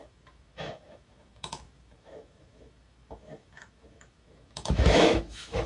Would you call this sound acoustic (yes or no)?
no